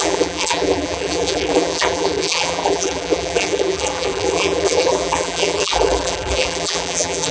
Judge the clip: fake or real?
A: fake